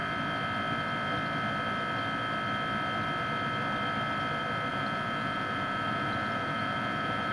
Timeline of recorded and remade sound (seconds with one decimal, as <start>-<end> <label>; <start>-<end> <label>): 0.0-4.7 recorded; 4.7-7.3 remade